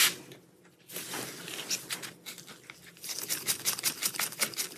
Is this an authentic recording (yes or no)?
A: yes